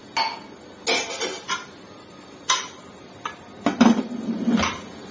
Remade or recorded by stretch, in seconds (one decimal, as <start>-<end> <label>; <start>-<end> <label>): 0.0-5.1 recorded